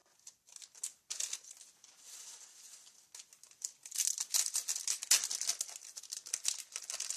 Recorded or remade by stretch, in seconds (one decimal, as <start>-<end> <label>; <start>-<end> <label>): 0.0-7.2 recorded